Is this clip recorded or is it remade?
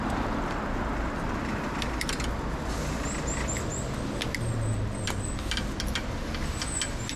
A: recorded